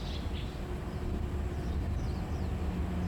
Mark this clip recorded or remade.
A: recorded